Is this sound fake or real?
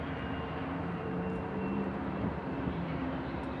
fake